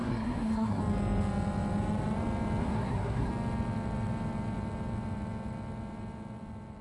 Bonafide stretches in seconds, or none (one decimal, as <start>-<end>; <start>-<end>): 0.8-2.6; 3.3-6.8